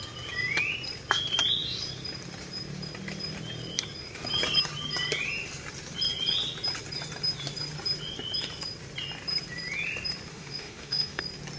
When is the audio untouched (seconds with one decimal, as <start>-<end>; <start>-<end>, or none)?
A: 0.0-10.3; 11.2-11.6